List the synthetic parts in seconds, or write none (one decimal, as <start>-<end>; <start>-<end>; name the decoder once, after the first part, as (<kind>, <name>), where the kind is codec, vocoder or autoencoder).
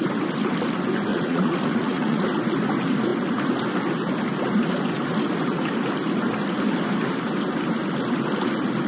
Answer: 1.1-2.2 (vocoder, Vocos)